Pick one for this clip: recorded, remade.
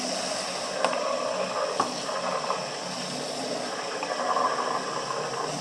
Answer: recorded